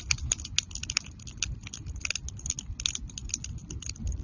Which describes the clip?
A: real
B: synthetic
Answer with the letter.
A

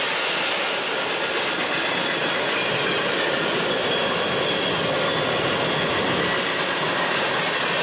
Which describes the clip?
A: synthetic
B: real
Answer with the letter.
B